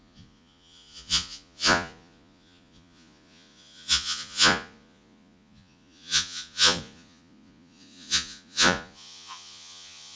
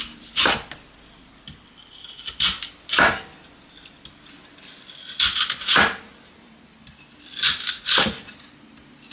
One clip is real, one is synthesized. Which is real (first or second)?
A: second